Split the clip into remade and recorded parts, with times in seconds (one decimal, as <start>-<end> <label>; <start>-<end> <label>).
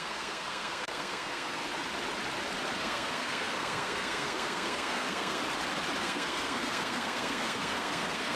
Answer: 0.0-1.6 remade; 1.6-2.8 recorded; 2.8-5.4 remade; 5.4-6.0 recorded; 6.0-8.4 remade